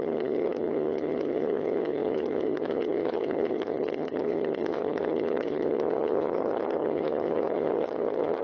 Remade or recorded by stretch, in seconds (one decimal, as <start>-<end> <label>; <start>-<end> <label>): 0.0-8.4 remade